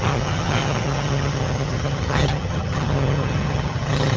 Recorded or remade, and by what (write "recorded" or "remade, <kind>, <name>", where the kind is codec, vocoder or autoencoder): remade, vocoder, HiFi-GAN